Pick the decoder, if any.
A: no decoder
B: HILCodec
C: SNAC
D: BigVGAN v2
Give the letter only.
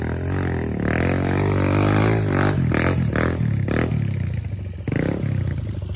A